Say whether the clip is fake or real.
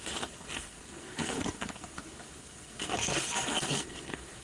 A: fake